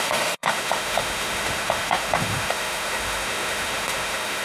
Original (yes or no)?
no